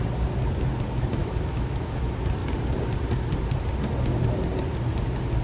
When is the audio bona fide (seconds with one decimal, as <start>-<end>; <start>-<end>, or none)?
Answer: 0.0-1.2; 2.0-5.4